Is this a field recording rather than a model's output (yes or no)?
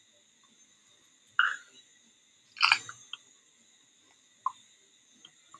yes